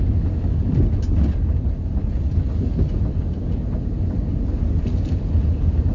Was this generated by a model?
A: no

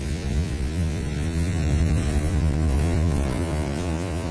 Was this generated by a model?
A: yes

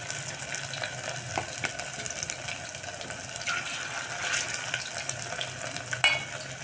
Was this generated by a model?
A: no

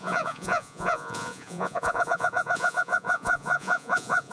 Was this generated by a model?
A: yes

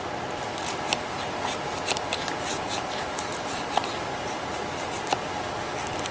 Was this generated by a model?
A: no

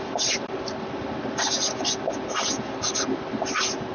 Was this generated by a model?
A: no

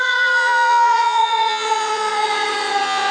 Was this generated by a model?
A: yes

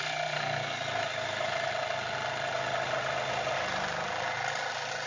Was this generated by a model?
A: no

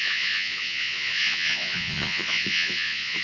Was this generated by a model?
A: yes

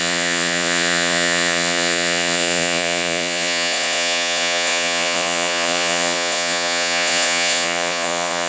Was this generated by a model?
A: yes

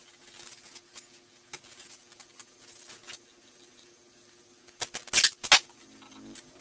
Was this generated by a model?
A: no